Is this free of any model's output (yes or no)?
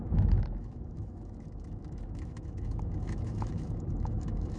no